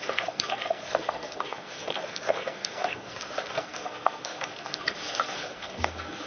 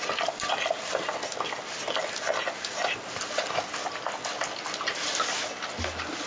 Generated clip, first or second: first